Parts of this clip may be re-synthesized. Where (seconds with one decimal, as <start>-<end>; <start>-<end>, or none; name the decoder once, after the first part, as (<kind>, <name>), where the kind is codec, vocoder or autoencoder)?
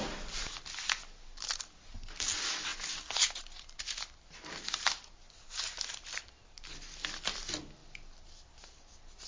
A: none